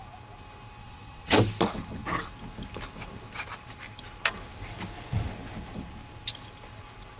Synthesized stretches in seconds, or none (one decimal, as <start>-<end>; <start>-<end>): 0.8-1.4